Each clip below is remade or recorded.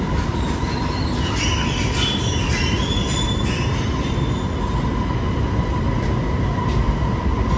recorded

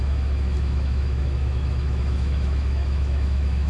remade